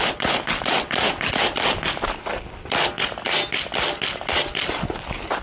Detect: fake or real real